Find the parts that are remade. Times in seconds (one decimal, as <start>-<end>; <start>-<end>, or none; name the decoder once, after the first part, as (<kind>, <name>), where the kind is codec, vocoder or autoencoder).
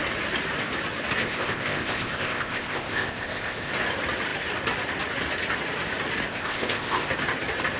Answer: 1.2-3.7 (codec, ZipCodec); 6.3-7.1